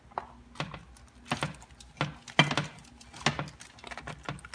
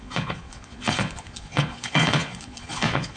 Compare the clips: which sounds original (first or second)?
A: first